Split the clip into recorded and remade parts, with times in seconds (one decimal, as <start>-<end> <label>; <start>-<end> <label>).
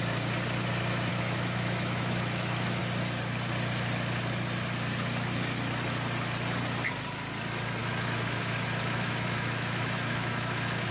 0.0-1.1 recorded; 1.1-2.8 remade; 2.8-7.8 recorded; 7.8-10.9 remade